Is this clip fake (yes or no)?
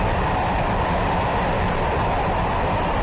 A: no